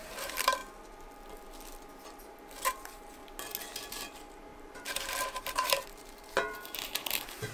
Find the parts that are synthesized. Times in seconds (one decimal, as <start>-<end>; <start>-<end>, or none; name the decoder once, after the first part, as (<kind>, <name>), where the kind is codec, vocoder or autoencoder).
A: 0.0-0.6 (vocoder, BigVGAN v2); 2.2-3.2; 3.9-7.5